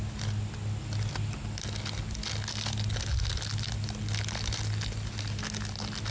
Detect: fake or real real